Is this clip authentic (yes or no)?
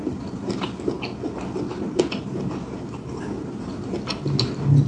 yes